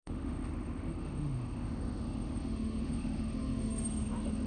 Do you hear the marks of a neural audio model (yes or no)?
yes